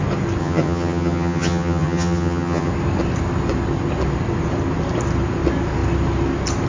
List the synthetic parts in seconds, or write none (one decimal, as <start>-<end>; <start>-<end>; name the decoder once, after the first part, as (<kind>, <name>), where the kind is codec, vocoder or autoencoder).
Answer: 0.4-2.7 (vocoder, HiFi-GAN)